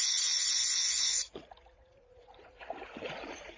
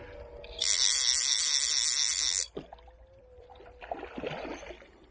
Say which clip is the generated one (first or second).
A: first